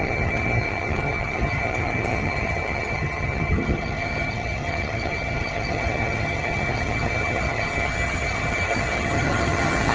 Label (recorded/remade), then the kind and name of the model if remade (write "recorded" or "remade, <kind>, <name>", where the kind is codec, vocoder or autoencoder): remade, vocoder, HiFi-GAN